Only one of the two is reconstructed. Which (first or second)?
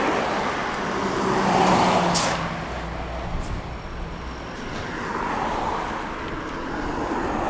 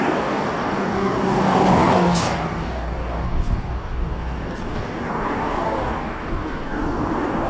second